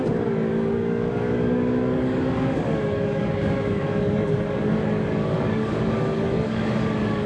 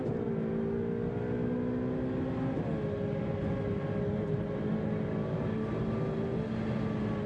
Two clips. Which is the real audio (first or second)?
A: second